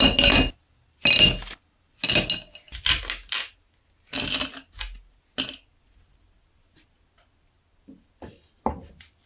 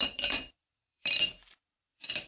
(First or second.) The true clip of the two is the first